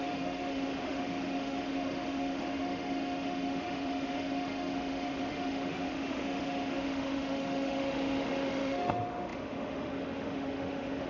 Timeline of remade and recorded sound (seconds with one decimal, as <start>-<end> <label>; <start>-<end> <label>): 0.0-11.1 remade